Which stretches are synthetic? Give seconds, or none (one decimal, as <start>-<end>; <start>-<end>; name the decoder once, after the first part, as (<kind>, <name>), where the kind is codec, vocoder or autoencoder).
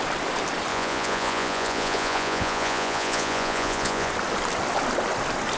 0.7-4.1 (vocoder, Vocos)